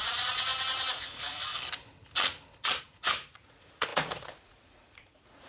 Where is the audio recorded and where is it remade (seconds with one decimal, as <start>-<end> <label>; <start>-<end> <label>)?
0.0-0.5 remade; 0.5-1.0 recorded; 1.0-1.5 remade; 1.5-2.8 recorded; 2.8-5.5 remade